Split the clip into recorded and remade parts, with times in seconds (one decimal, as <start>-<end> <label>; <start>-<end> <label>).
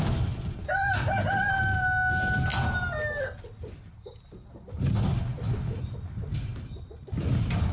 0.0-7.7 recorded